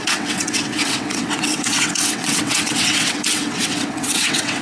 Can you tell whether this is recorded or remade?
remade